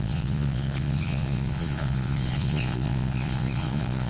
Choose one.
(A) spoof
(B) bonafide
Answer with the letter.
A